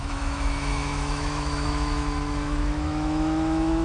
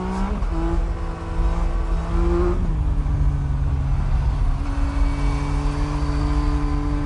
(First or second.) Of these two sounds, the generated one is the first